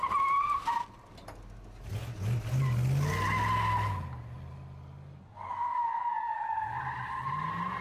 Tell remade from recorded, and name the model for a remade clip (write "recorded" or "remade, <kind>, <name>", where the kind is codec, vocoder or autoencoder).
recorded